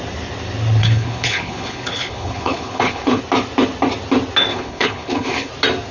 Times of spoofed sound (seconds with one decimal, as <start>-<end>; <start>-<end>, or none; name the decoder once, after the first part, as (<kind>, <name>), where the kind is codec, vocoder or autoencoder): 0.8-3.2 (codec, HILCodec); 4.5-5.5